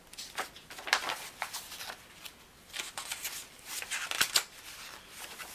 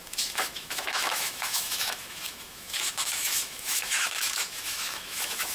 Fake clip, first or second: second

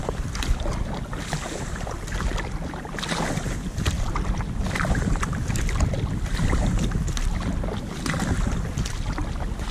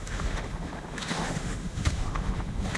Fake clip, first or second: second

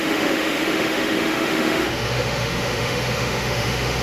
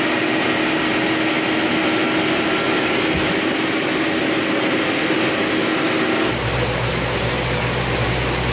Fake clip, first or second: first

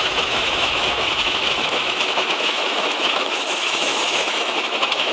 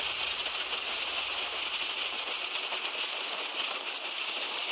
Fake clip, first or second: first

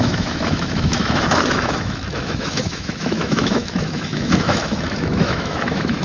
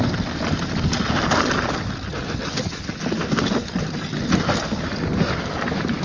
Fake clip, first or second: first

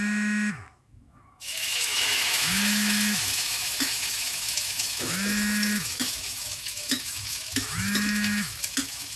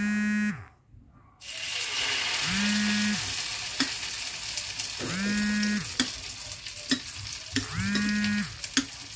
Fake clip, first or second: first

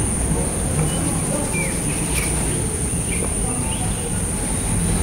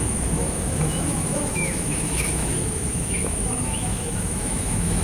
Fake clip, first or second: second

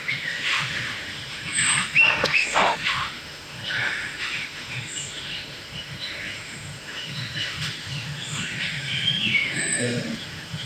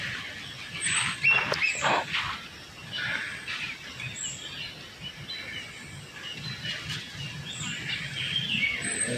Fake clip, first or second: first